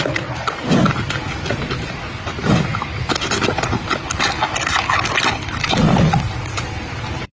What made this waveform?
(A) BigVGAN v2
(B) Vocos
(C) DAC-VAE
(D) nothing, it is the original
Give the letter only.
D